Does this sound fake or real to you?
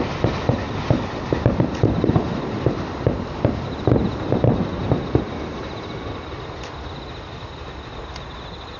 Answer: real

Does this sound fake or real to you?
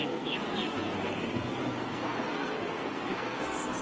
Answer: fake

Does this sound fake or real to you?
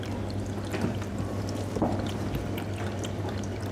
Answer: real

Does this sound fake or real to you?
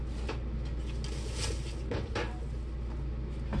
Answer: real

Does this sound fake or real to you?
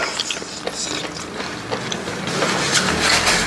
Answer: real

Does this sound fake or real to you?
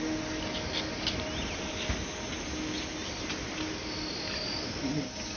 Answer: real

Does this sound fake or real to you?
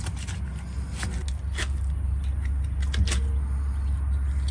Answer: real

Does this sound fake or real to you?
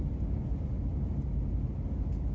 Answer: real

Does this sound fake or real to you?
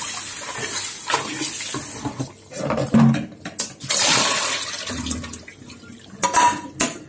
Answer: real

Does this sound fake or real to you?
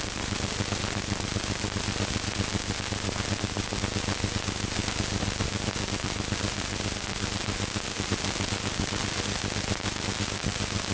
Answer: real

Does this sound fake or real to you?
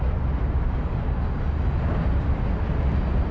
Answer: real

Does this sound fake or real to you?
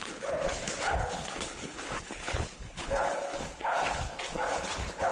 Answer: fake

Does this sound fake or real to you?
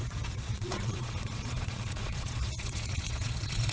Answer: fake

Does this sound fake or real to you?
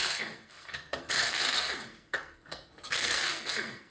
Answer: fake